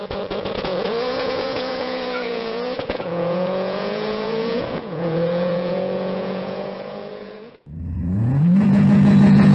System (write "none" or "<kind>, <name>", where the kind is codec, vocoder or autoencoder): vocoder, Vocos